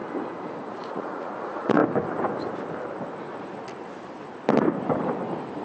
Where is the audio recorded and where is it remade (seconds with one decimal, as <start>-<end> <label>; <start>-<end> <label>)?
0.0-0.7 recorded; 0.7-1.8 remade; 1.8-5.6 recorded